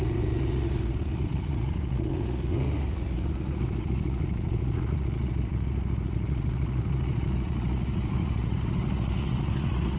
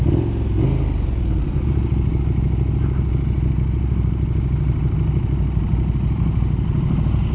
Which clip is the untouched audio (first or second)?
second